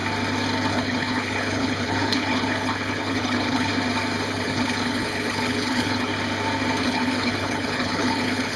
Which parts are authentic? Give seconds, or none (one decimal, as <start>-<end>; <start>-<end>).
0.0-0.7; 3.7-4.3; 6.1-6.8